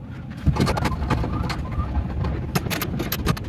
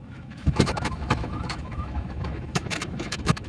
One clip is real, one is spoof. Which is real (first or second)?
first